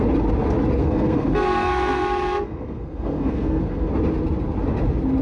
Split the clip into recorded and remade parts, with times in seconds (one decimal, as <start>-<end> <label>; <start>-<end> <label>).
0.0-0.8 recorded; 0.8-3.9 remade; 3.9-5.2 recorded